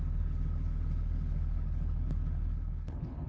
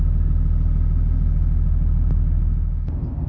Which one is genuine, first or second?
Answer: second